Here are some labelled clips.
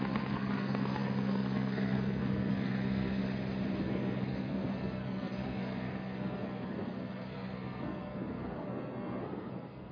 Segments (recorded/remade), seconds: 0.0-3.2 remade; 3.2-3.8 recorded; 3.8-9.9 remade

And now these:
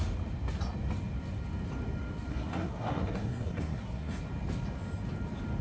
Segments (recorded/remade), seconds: 0.0-2.3 recorded; 2.3-4.2 remade; 4.2-5.6 recorded

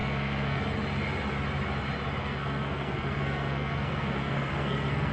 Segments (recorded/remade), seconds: 0.0-0.6 remade; 0.6-2.2 recorded; 2.2-5.1 remade

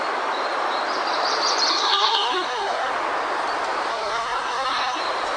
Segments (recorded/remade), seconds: 0.0-1.7 recorded; 1.7-2.9 remade; 2.9-3.9 recorded; 3.9-5.0 remade; 5.0-5.4 recorded

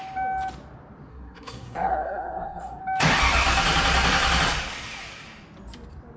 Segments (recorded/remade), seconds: 0.0-1.1 recorded; 1.1-2.8 remade; 2.8-6.2 recorded

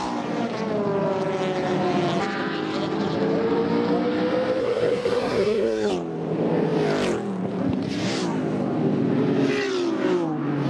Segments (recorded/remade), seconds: 0.0-4.6 recorded; 4.6-5.9 remade; 5.9-10.7 recorded

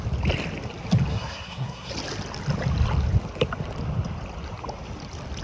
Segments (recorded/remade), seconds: 0.0-1.1 recorded; 1.1-1.9 remade; 1.9-5.4 recorded